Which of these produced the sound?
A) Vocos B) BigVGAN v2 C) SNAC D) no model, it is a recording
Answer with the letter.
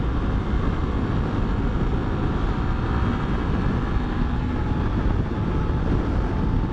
D